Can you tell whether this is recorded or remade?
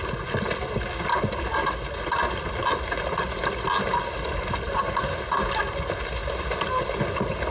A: recorded